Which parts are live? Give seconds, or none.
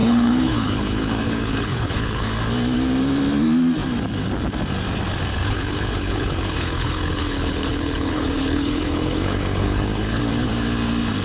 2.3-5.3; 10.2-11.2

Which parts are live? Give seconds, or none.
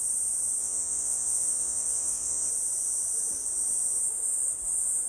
0.0-0.6; 2.5-5.1